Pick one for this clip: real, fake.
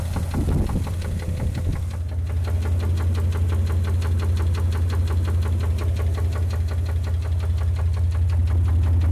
real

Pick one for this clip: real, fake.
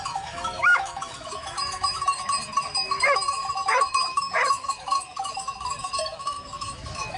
fake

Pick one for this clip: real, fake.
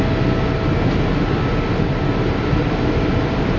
real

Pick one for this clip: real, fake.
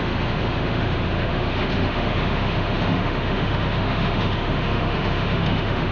fake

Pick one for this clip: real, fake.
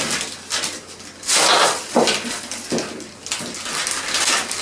real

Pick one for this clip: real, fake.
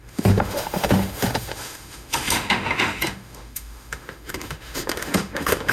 fake